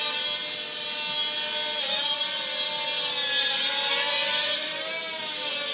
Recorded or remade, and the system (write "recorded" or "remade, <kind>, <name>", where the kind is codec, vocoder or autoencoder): recorded